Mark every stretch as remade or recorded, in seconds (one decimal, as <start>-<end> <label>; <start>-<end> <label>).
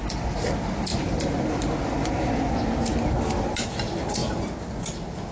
0.0-0.9 recorded; 0.9-2.3 remade; 2.3-5.3 recorded